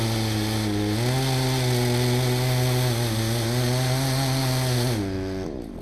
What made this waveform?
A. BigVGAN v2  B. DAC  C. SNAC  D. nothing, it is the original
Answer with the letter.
D